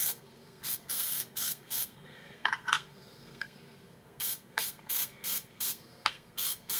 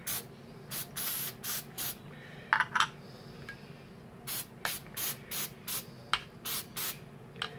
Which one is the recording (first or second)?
second